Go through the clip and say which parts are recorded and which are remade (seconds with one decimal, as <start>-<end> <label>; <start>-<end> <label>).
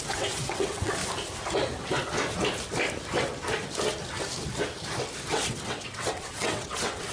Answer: 0.0-1.0 remade; 1.0-5.3 recorded; 5.3-7.1 remade